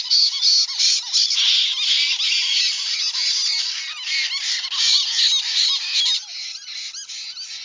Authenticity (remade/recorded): recorded